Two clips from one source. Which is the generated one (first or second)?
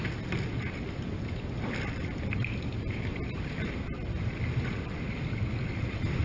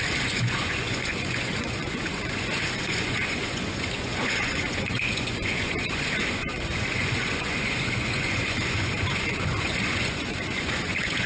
second